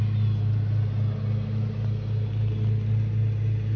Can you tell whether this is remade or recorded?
recorded